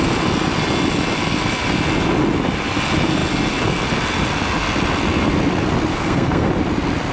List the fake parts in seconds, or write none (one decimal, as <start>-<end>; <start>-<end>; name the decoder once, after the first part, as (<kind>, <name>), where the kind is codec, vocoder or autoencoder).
5.9-6.5 (codec, SNAC)